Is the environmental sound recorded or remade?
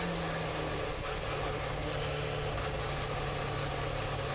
recorded